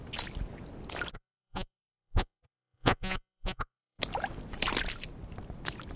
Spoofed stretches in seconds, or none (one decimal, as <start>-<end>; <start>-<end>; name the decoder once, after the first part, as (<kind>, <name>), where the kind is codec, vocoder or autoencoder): 1.1-4.0 (vocoder, Vocos)